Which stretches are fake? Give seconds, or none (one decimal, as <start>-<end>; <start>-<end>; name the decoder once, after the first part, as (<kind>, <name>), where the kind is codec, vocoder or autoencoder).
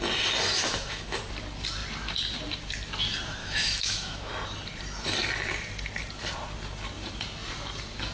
0.6-1.2 (autoencoder, DAC-VAE); 3.4-4.3